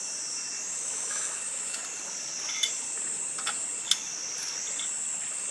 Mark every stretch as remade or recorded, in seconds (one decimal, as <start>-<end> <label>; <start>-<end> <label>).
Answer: 0.0-0.6 recorded; 0.6-1.8 remade; 1.8-5.5 recorded